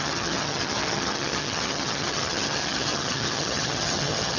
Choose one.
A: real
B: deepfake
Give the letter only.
B